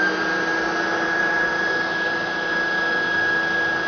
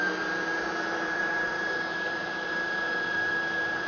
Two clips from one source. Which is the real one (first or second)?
first